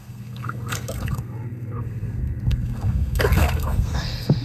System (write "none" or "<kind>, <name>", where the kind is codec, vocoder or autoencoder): codec, SNAC